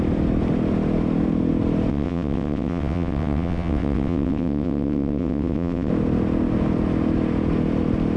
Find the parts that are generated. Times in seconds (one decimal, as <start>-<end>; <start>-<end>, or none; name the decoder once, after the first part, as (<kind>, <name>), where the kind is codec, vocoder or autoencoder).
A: 1.9-5.9 (vocoder, WaveNeXt)